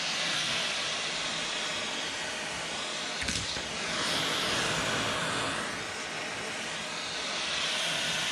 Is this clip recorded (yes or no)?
yes